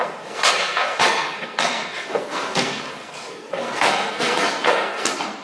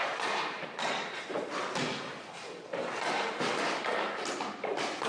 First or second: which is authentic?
second